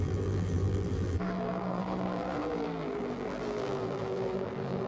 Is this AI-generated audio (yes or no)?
yes